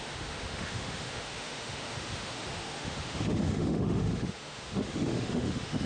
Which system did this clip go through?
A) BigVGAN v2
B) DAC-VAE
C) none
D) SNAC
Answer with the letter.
B